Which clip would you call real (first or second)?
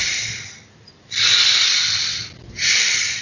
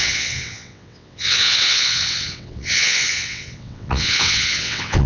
first